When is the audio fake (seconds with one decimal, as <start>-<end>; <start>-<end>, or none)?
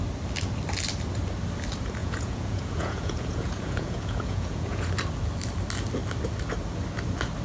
2.0-4.9